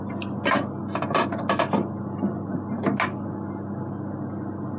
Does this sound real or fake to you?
real